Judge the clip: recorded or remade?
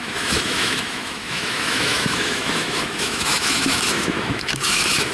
remade